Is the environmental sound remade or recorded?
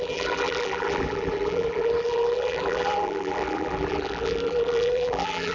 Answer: remade